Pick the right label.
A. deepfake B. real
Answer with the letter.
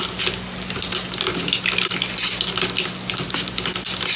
B